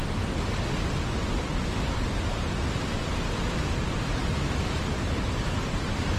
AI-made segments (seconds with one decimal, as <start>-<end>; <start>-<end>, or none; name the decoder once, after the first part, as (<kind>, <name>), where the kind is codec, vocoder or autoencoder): none